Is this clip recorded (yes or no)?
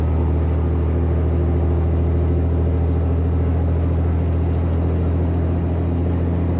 yes